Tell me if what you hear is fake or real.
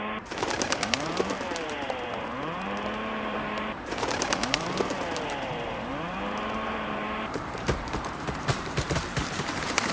fake